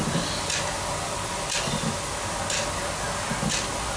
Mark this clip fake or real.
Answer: real